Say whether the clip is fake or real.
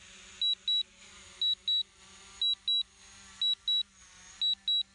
real